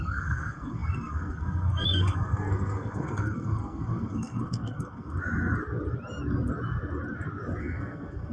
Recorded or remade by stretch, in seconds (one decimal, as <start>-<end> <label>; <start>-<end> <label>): 0.0-5.2 remade; 5.2-7.6 recorded; 7.6-8.3 remade